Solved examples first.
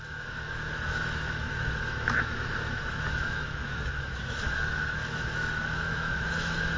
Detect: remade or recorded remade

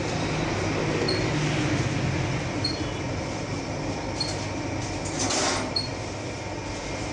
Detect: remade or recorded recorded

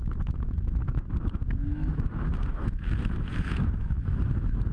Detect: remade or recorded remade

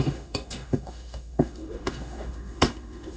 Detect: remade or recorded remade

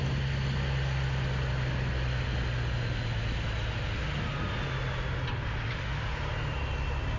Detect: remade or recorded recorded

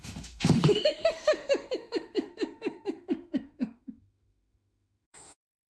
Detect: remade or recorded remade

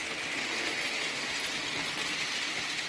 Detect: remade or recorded recorded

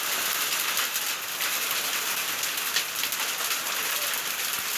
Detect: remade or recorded recorded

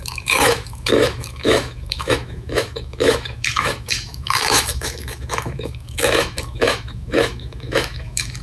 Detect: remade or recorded remade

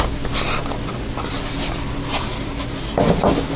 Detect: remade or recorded recorded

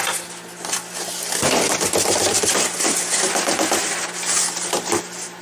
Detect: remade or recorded recorded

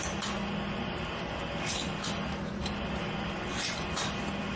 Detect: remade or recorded recorded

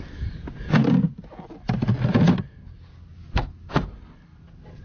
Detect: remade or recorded recorded